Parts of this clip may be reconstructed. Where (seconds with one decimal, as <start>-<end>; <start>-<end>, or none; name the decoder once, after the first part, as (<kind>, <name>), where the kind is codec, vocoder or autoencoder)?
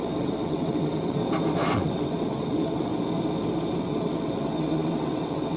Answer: 0.0-1.2 (vocoder, WaveNeXt); 1.7-2.9; 3.7-5.6